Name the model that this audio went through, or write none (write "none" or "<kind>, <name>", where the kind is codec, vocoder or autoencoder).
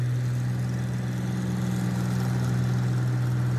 none